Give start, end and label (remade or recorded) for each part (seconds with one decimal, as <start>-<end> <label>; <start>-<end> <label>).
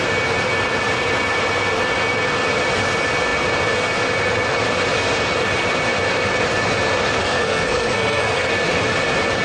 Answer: 0.0-7.2 recorded; 7.2-8.5 remade; 8.5-9.4 recorded